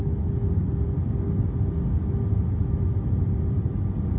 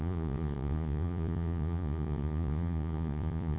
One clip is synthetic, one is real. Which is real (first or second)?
first